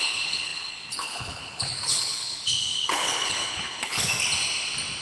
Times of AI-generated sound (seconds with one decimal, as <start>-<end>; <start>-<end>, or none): 0.0-4.1